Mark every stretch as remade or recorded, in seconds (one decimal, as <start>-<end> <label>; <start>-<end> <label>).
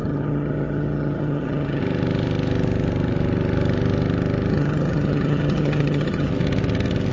0.0-1.8 remade; 1.8-4.5 recorded; 4.5-6.3 remade; 6.3-7.1 recorded